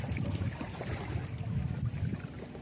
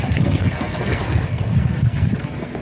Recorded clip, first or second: first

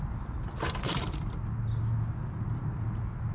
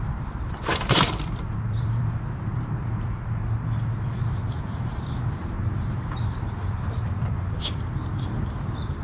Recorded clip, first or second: first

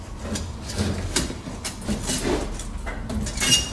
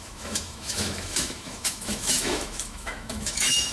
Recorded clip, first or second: first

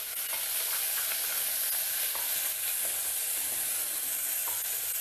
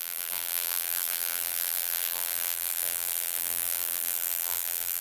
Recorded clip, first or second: first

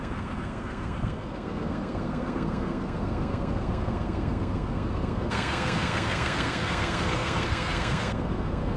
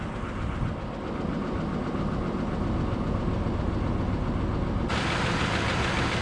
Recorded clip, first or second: second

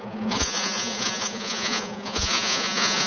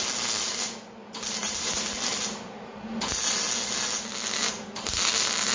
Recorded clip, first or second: second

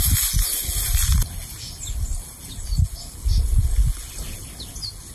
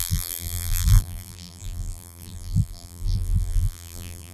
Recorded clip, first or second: first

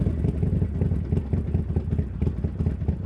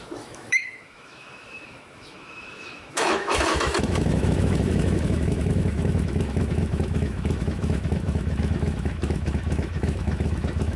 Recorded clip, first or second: first